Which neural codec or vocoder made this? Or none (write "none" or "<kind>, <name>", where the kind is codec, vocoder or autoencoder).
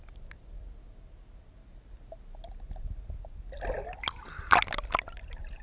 none